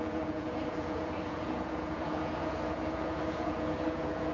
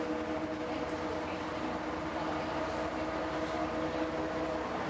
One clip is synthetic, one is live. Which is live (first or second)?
second